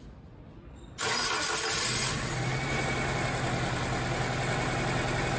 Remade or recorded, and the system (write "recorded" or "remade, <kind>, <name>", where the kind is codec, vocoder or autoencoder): recorded